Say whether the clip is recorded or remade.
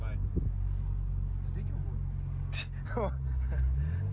recorded